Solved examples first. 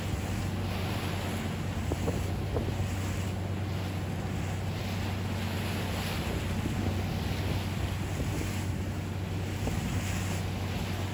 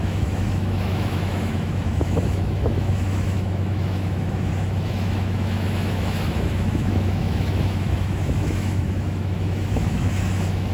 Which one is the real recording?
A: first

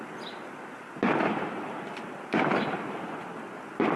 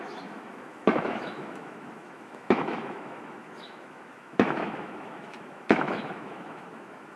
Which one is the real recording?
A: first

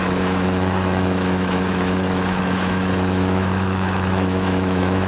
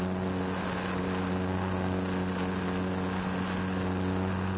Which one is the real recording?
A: second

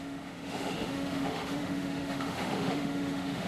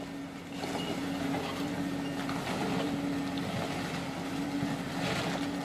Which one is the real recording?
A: second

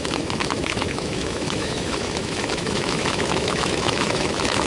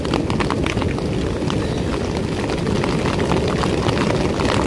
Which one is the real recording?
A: second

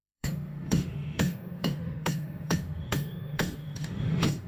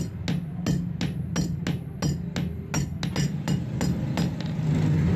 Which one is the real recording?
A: second